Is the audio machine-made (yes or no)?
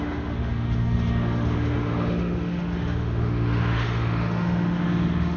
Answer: yes